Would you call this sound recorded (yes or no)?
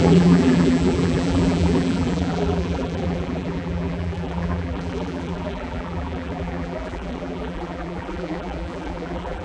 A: no